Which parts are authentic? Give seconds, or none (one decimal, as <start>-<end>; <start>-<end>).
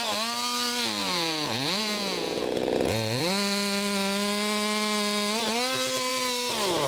0.0-1.0; 3.2-6.9